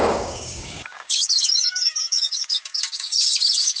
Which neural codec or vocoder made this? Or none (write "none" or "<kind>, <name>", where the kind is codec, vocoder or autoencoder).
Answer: codec, DAC